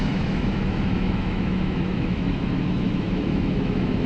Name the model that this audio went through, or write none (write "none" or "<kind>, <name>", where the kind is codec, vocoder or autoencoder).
autoencoder, DAC-VAE